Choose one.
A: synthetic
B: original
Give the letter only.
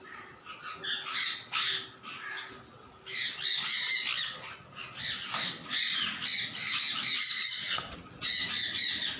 B